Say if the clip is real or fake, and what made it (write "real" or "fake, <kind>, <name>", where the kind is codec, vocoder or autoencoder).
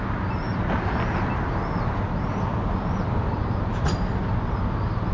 real